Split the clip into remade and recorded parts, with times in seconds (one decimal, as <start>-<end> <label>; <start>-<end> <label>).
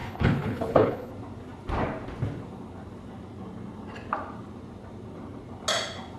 0.0-1.1 remade; 1.1-6.2 recorded